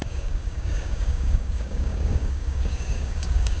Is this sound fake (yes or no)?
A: yes